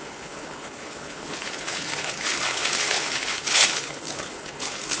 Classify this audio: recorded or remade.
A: remade